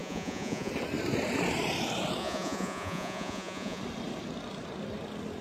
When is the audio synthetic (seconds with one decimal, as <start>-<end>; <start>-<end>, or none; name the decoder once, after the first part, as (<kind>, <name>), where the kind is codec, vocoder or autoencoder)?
0.0-0.7 (vocoder, Vocos); 2.2-3.8